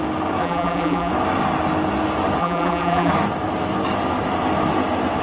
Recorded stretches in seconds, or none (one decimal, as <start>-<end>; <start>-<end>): 0.0-0.4; 1.1-2.4; 3.1-5.2